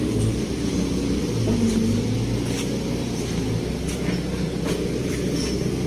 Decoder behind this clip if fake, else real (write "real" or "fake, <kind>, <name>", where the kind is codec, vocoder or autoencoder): real